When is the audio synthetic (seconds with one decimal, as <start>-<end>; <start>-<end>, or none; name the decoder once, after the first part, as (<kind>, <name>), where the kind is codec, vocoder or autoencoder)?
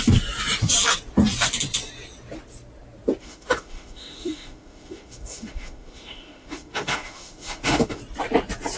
3.2-8.0 (autoencoder, DAC-VAE)